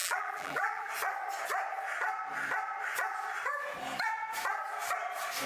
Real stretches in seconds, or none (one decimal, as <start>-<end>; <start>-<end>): 0.9-5.5